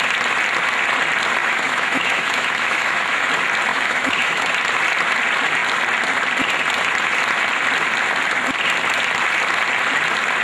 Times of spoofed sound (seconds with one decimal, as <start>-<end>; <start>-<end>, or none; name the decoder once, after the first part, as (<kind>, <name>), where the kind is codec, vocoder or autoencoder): 1.4-3.3 (autoencoder, DAC-VAE); 3.7-4.5